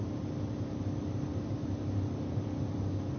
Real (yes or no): yes